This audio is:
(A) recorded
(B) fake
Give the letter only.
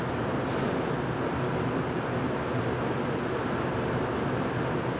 A